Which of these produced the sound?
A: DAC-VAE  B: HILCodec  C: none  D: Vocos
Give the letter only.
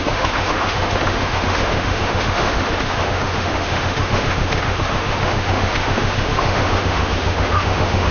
A